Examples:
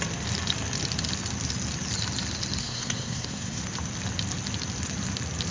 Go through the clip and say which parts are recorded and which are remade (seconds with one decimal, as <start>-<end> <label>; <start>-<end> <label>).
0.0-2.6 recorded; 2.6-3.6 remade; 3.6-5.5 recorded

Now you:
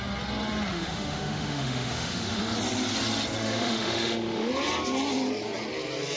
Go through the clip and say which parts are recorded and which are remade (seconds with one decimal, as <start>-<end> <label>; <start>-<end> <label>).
0.0-0.7 recorded; 0.7-2.4 remade; 2.4-3.4 recorded; 3.4-4.5 remade; 4.5-6.2 recorded

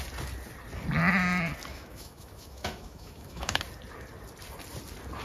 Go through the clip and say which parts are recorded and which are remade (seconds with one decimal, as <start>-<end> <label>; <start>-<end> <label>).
0.0-1.7 recorded; 1.7-3.6 remade; 3.6-5.2 recorded

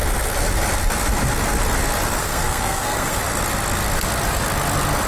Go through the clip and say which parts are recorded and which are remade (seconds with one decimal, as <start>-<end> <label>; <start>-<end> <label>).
0.0-2.2 recorded; 2.2-3.2 remade; 3.2-5.1 recorded

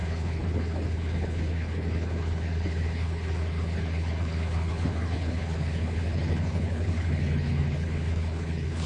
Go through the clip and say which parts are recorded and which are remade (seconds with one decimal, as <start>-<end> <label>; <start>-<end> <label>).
0.0-8.9 remade